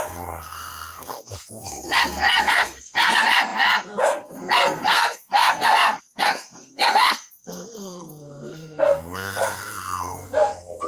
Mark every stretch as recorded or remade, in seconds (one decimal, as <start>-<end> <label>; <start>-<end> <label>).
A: 0.0-10.9 remade